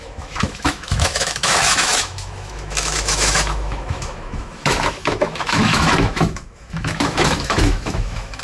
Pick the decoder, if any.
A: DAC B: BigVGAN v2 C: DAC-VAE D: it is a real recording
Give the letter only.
C